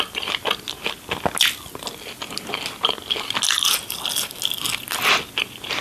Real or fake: real